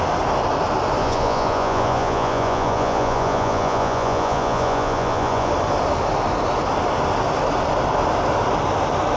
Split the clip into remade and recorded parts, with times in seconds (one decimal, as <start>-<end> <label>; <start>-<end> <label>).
0.0-1.0 recorded; 1.0-5.5 remade; 5.5-9.2 recorded